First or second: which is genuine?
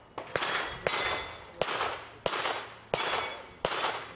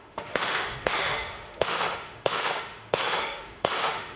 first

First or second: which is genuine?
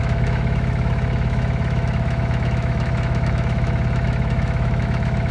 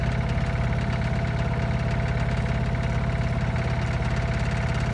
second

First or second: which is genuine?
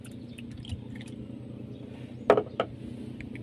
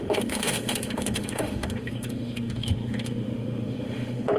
first